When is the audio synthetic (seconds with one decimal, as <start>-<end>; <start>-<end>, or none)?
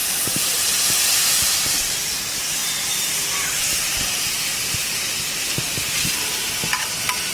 0.0-2.6; 5.8-7.3